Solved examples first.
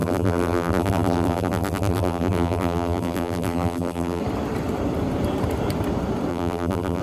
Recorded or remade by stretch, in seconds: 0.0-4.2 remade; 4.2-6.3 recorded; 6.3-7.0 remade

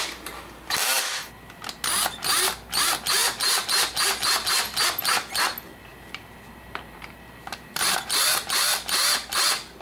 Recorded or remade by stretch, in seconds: 0.0-5.9 recorded; 5.9-8.6 remade; 8.6-9.8 recorded